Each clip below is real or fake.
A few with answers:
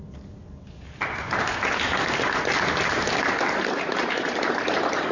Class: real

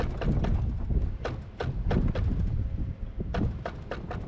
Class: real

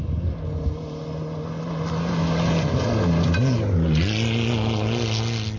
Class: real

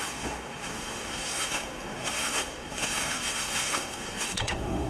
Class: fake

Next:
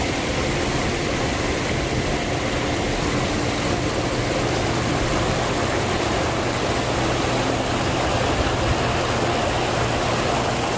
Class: real